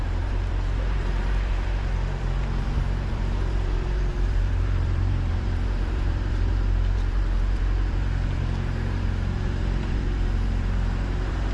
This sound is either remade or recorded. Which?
remade